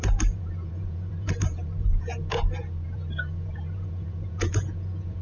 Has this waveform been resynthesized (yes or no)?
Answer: yes